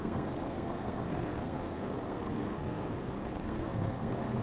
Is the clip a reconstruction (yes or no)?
yes